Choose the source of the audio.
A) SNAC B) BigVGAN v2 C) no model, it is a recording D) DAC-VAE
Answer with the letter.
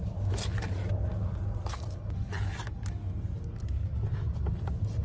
C